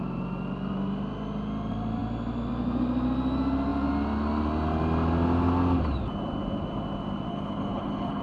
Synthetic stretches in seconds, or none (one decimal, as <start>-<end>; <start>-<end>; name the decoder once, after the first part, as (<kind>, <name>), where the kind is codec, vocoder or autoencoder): 7.3-8.2 (codec, HILCodec)